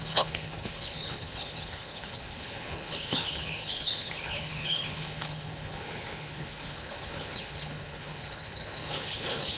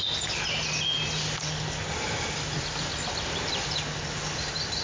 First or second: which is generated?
first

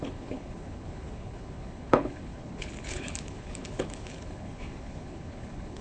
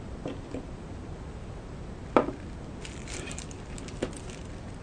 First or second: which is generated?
first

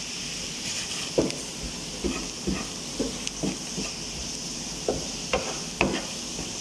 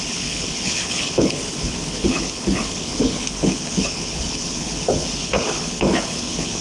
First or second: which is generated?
second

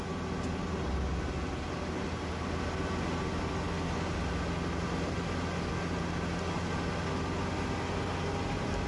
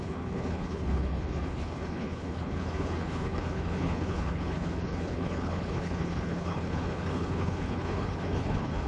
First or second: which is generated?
second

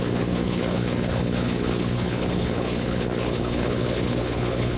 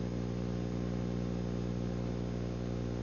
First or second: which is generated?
first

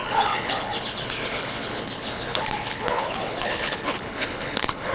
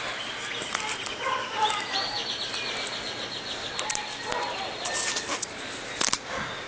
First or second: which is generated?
first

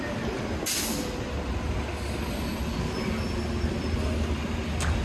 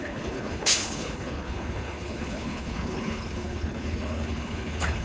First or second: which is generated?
second